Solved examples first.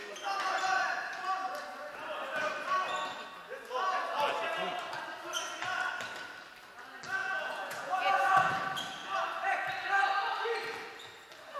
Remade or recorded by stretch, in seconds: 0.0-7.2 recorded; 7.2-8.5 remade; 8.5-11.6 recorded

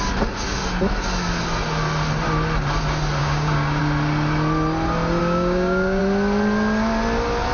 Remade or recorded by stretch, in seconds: 0.0-3.2 recorded; 3.2-3.8 remade; 3.8-5.2 recorded; 5.2-6.0 remade; 6.0-7.5 recorded

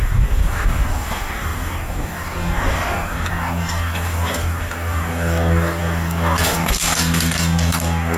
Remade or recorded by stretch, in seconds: 0.0-8.2 remade

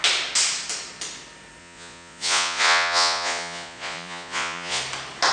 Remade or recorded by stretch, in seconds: 0.0-1.6 recorded; 1.6-4.8 remade; 4.8-5.3 recorded

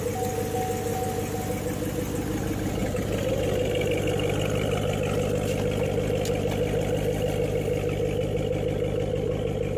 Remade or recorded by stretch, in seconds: 0.0-2.8 recorded; 2.8-3.3 remade; 3.3-9.8 recorded